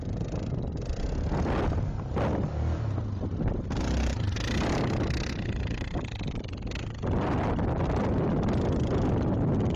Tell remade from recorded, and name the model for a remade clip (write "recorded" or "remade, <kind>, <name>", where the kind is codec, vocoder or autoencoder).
recorded